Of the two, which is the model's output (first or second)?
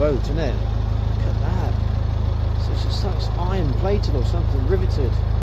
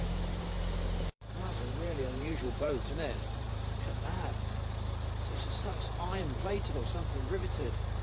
second